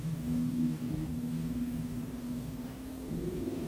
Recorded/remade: remade